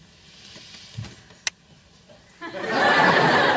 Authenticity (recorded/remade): recorded